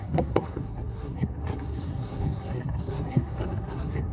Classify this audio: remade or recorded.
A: remade